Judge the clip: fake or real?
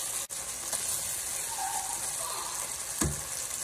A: real